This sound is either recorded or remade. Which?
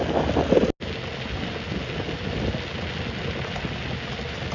recorded